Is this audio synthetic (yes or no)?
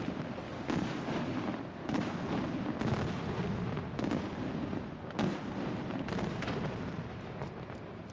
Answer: no